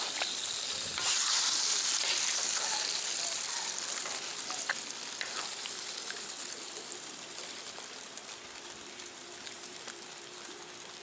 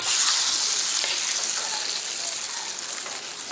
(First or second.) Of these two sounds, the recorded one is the second